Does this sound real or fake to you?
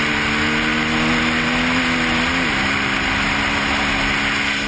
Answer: real